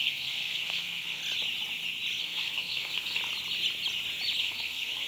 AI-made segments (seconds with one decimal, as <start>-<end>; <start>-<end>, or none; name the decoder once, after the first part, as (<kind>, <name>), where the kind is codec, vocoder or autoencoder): 0.0-1.2 (codec, SNAC); 2.2-3.2; 4.4-5.1